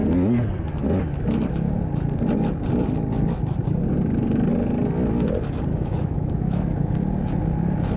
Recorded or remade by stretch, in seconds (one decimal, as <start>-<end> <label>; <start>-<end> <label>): 0.0-5.7 recorded; 5.7-6.9 remade; 6.9-8.0 recorded